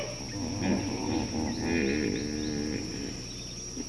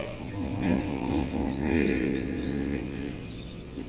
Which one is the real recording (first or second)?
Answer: first